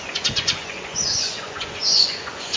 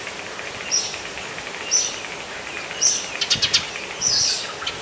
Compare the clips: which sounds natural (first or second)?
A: second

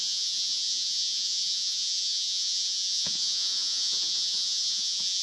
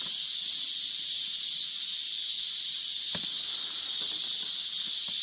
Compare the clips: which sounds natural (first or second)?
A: second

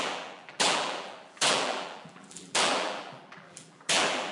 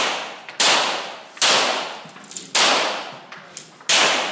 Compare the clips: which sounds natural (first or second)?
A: second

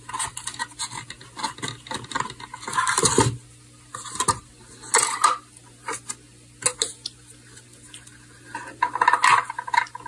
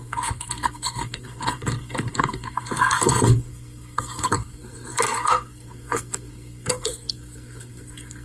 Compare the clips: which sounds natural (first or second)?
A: first